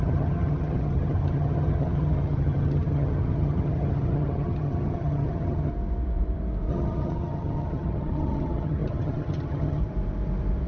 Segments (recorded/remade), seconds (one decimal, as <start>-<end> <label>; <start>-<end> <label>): 0.0-5.7 remade; 5.7-6.7 recorded; 6.7-9.8 remade; 9.8-10.7 recorded